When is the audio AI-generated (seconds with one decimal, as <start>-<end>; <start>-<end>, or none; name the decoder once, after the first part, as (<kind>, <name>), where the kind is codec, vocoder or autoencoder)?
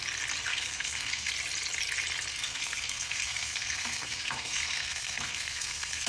0.5-1.3 (codec, SNAC); 2.3-6.1